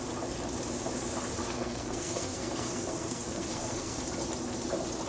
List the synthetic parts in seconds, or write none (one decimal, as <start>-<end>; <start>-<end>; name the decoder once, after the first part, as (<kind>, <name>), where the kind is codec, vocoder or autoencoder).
1.4-4.0 (codec, SNAC)